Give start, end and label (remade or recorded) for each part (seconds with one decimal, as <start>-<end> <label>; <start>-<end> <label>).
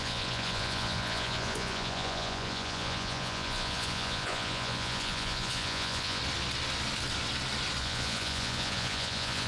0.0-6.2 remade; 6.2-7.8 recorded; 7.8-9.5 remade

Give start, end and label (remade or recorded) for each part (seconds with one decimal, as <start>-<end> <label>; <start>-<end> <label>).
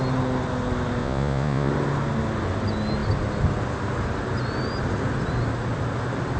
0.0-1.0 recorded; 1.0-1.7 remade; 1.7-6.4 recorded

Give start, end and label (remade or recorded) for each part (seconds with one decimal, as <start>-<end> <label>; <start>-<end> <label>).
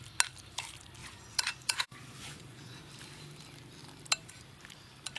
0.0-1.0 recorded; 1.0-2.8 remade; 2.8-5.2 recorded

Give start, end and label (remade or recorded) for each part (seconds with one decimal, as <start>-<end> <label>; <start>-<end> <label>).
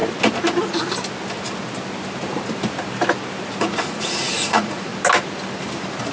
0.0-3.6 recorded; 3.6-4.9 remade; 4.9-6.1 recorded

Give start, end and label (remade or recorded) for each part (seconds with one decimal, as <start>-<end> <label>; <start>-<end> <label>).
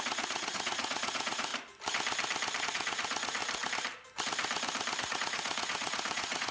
0.0-1.5 remade; 1.5-2.6 recorded; 2.6-3.4 remade; 3.4-5.0 recorded; 5.0-6.5 remade